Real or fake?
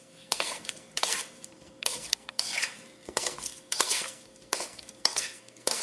fake